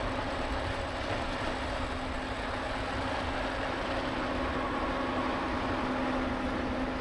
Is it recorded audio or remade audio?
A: recorded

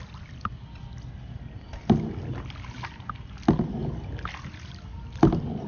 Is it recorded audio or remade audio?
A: recorded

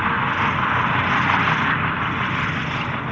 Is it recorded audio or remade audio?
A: recorded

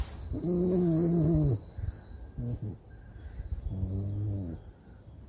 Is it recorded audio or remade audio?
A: recorded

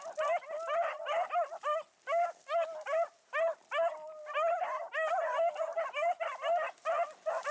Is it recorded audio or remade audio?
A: recorded